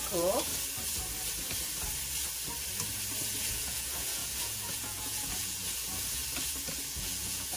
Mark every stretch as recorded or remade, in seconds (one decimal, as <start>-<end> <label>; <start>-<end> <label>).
0.0-0.5 remade; 0.5-3.4 recorded; 3.4-6.2 remade; 6.2-6.9 recorded; 6.9-7.6 remade